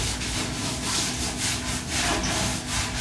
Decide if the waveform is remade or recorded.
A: recorded